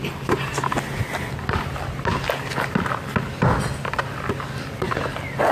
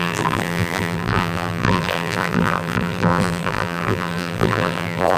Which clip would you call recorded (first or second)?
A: first